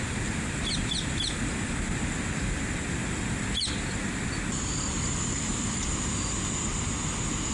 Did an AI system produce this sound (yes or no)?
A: no